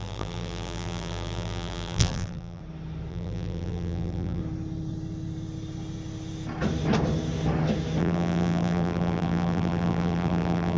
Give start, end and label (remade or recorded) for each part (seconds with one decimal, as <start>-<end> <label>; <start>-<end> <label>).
0.0-2.6 remade; 2.6-3.1 recorded; 3.1-4.4 remade; 4.4-8.0 recorded; 8.0-10.8 remade